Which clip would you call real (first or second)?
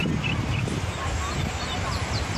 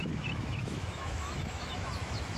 first